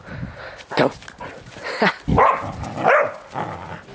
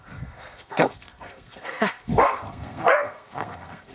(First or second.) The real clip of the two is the first